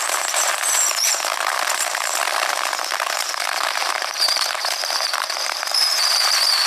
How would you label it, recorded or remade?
remade